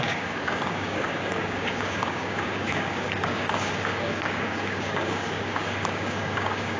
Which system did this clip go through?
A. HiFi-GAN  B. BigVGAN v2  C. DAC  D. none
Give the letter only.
C